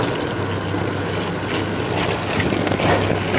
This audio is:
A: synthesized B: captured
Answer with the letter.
B